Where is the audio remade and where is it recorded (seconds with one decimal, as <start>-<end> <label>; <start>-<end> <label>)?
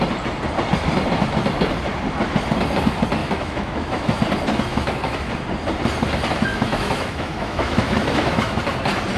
0.0-3.2 recorded; 3.2-4.2 remade; 4.2-4.7 recorded; 4.7-5.3 remade; 5.3-6.5 recorded; 6.5-8.6 remade; 8.6-9.2 recorded